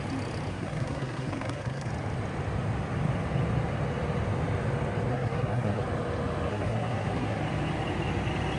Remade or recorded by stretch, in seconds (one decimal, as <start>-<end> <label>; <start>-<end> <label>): 0.0-0.5 recorded; 0.5-1.9 remade; 1.9-5.1 recorded; 5.1-5.8 remade; 5.8-6.5 recorded; 6.5-7.4 remade; 7.4-8.6 recorded